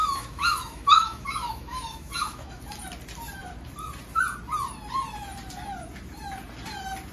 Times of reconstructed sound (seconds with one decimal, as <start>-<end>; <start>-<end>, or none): 0.0-2.6